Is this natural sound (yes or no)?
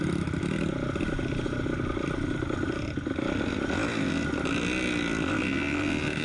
yes